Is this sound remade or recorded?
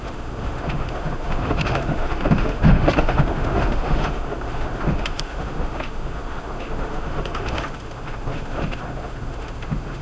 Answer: remade